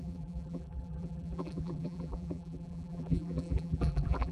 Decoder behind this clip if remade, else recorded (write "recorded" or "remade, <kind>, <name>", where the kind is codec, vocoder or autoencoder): remade, vocoder, BigVGAN v2